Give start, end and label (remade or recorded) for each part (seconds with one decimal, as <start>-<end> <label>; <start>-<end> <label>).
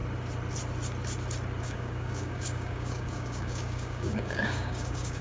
0.0-1.6 recorded; 1.6-5.2 remade